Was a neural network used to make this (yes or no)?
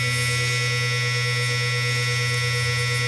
no